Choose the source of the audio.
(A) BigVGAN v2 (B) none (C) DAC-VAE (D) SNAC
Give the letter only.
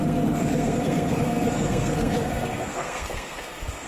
D